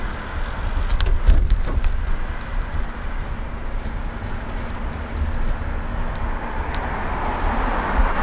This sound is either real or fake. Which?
real